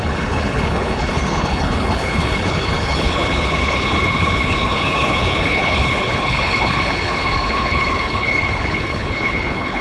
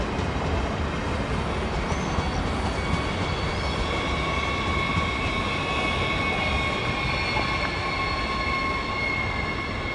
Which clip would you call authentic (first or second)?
second